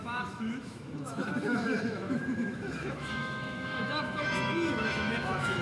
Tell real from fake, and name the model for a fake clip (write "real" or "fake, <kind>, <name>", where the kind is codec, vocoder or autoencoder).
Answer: fake, autoencoder, DAC-VAE